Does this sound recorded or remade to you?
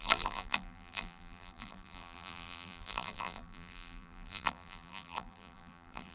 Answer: remade